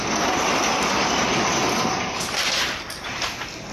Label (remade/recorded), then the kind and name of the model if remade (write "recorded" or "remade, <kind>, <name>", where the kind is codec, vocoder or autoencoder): recorded